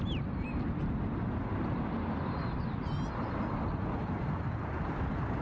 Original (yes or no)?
yes